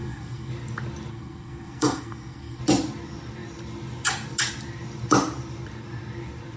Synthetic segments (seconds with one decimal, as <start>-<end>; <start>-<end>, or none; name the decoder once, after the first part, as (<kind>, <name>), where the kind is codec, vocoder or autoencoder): 0.0-0.5 (codec, SNAC); 1.1-2.6